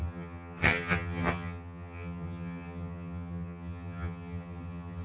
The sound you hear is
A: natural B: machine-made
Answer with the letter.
B